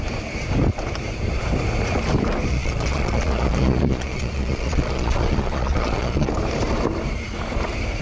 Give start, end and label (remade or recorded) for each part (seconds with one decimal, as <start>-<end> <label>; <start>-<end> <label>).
0.0-2.5 recorded; 2.5-6.3 remade; 6.3-8.0 recorded